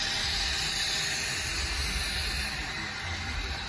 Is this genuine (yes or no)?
yes